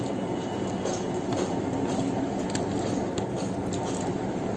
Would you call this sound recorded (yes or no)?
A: yes